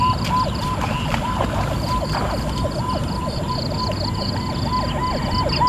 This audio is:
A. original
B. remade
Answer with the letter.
A